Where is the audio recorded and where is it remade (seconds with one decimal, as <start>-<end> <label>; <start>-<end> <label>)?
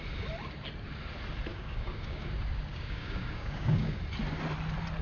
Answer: 0.0-1.5 recorded; 1.5-2.3 remade; 2.3-2.7 recorded; 2.7-4.0 remade; 4.0-5.0 recorded